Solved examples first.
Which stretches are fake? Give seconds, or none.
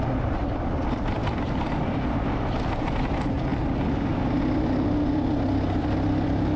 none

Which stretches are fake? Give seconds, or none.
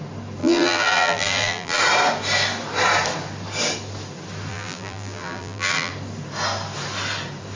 0.4-1.8; 4.5-5.9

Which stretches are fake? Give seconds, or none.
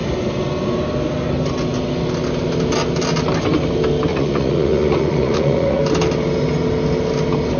4.1-5.8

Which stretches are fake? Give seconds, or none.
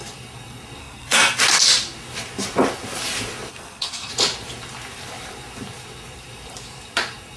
0.8-1.4; 3.5-4.1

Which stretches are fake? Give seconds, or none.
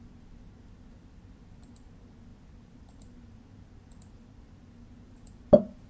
none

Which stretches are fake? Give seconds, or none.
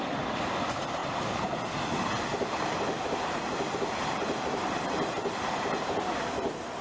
none